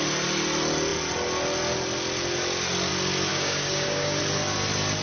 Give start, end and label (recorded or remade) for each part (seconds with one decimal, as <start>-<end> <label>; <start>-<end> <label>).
0.0-3.3 recorded; 3.3-4.2 remade; 4.2-5.0 recorded